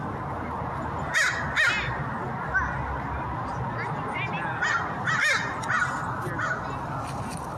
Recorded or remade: recorded